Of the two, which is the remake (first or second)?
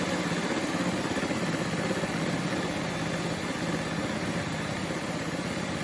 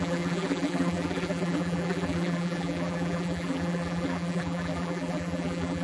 second